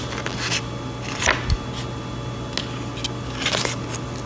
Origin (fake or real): real